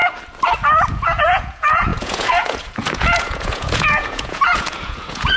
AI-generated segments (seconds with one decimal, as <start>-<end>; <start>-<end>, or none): 0.9-5.4